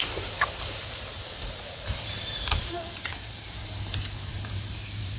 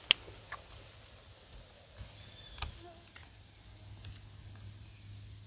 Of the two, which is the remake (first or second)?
first